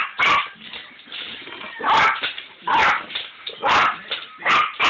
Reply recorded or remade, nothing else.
recorded